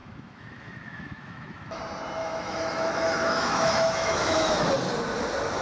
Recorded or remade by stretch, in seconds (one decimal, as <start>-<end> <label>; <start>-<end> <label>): 0.0-1.8 remade; 1.8-2.2 recorded; 2.2-4.7 remade; 4.7-5.6 recorded